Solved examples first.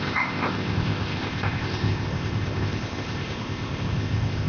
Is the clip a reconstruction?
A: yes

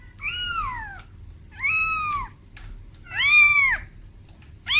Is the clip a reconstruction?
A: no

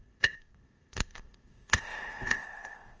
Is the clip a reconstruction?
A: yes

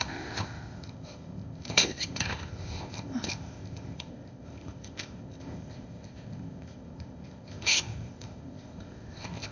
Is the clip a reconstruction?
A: yes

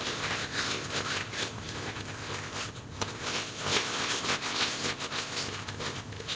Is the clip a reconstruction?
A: yes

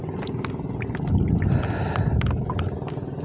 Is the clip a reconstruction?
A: no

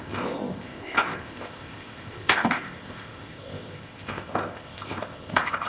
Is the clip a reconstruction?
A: yes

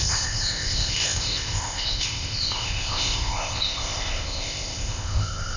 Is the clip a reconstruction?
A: yes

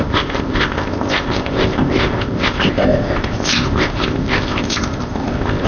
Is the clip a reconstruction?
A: yes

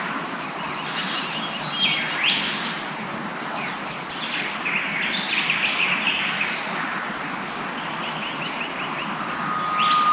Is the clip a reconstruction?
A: no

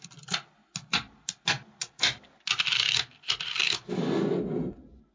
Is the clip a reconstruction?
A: no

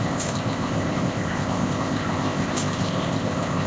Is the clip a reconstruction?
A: yes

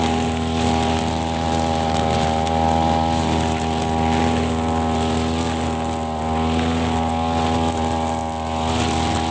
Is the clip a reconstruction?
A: no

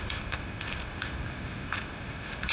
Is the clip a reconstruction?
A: yes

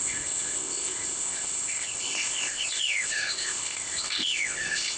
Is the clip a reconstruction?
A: yes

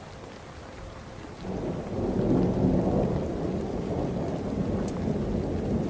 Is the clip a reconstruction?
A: no